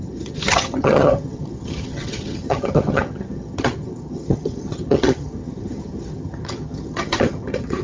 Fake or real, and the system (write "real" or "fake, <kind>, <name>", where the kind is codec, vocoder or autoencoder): fake, vocoder, HiFi-GAN